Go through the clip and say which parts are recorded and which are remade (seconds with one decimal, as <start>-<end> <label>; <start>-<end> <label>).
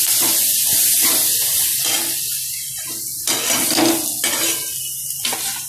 0.0-5.7 recorded